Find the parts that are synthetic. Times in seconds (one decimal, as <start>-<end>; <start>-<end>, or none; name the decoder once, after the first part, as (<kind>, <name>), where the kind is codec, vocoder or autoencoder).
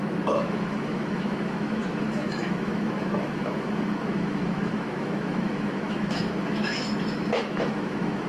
0.0-8.3 (autoencoder, DAC-VAE)